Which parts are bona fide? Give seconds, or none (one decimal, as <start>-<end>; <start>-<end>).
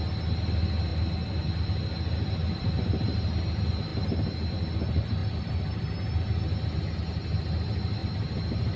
0.0-0.9; 3.4-5.2; 5.9-8.0